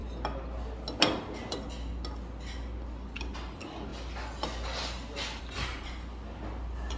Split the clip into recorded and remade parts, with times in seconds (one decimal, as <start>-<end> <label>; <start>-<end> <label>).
0.0-7.0 recorded